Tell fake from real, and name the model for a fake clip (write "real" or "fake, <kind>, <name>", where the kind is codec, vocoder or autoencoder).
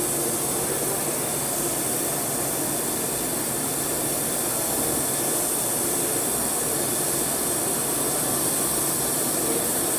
real